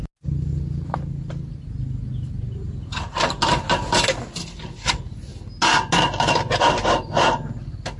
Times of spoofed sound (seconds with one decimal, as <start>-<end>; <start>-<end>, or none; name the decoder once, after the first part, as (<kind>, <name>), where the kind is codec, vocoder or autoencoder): none